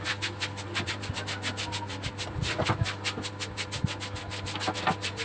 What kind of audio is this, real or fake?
real